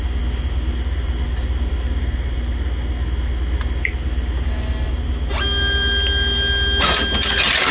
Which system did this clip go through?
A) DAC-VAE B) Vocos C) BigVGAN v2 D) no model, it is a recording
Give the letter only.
D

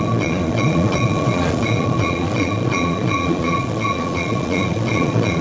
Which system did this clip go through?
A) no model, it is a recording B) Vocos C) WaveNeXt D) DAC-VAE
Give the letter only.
B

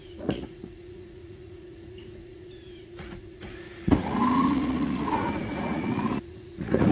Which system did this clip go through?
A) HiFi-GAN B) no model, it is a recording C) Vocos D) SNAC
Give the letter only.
C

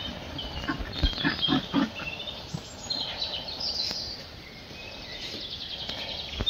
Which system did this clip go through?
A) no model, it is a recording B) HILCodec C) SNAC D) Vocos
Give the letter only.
A